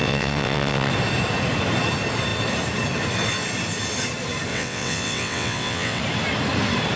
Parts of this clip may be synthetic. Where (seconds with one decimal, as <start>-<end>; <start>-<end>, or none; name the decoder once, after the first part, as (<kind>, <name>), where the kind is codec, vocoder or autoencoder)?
0.0-0.9 (vocoder, WaveNeXt); 4.5-6.0